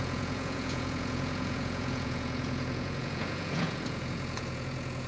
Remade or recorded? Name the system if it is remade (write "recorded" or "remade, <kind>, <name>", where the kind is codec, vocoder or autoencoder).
remade, vocoder, Vocos